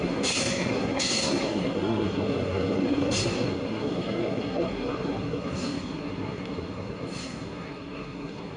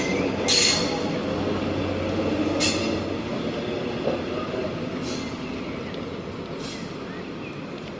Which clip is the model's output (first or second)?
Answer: first